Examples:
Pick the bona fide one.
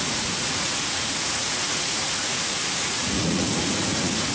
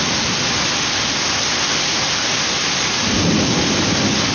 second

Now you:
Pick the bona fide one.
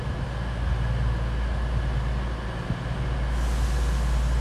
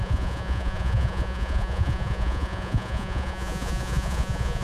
first